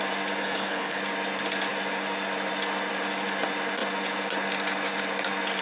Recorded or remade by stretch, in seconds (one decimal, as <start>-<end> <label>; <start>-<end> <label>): 0.0-0.4 recorded; 0.4-1.0 remade; 1.0-5.6 recorded